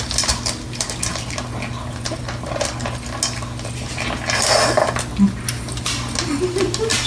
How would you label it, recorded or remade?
recorded